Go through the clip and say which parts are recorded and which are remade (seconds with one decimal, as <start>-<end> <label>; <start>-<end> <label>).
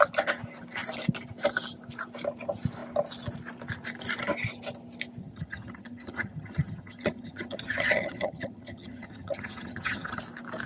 0.0-5.2 recorded; 5.2-10.2 remade; 10.2-10.7 recorded